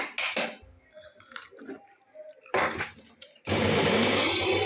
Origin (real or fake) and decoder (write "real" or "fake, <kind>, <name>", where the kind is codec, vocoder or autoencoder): real